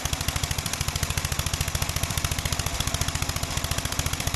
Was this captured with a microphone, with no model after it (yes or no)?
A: no